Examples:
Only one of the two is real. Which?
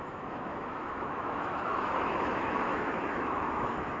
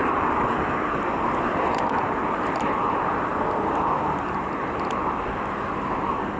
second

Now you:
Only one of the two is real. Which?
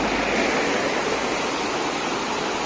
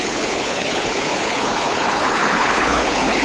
first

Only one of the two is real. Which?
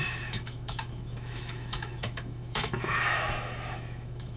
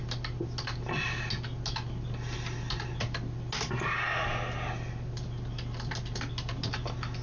second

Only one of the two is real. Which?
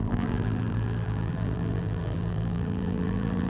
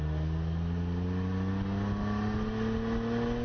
second